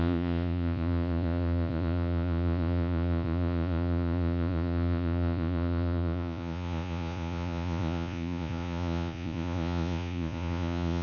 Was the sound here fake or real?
fake